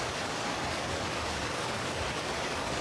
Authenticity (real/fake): fake